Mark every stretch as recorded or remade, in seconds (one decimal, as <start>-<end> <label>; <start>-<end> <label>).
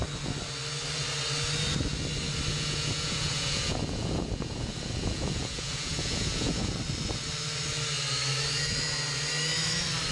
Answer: 0.0-2.5 recorded; 2.5-6.8 remade; 6.8-10.1 recorded